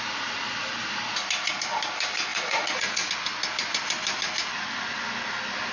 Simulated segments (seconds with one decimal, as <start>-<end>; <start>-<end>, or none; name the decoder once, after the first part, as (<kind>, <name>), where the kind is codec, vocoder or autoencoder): 2.3-3.1 (vocoder, Vocos)